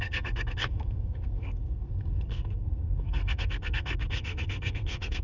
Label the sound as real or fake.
fake